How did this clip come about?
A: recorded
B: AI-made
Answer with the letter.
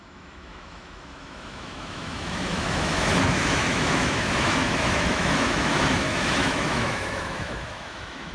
B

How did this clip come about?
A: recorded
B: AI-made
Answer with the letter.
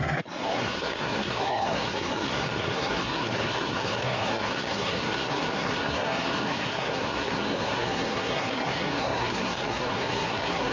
B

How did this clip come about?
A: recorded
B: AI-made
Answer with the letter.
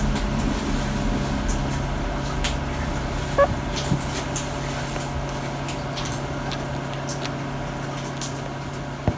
A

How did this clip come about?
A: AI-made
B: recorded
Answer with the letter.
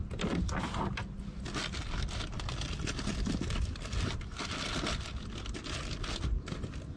B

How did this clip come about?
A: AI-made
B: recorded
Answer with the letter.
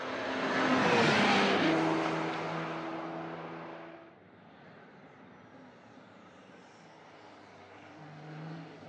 B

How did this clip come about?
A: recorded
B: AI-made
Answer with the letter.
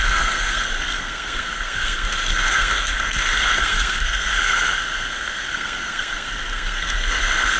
B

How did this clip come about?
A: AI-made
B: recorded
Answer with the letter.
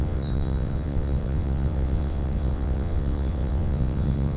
A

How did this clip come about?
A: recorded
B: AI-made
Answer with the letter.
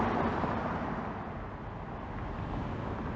A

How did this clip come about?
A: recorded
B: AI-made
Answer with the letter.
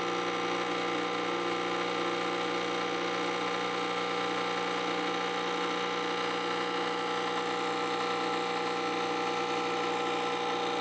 A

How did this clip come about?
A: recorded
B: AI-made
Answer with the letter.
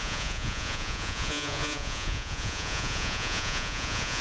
B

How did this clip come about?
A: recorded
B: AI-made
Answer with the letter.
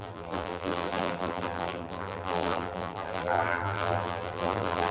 B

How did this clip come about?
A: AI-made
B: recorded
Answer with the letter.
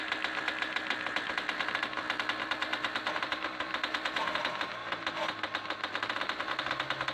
B